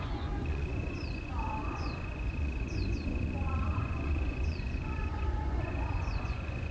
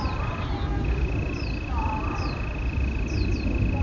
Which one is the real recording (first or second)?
second